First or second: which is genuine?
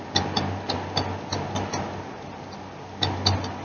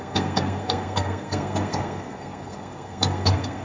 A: first